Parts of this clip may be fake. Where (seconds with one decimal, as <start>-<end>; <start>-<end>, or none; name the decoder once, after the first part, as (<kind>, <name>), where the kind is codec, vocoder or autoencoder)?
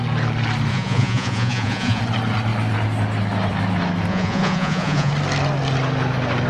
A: 0.7-2.0 (vocoder, Vocos); 4.1-5.1